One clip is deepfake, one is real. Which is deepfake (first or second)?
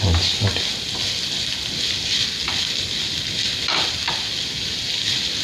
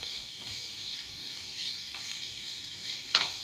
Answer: second